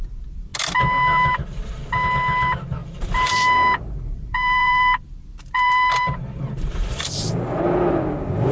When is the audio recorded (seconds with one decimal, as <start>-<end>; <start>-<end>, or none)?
0.0-2.8; 7.3-8.5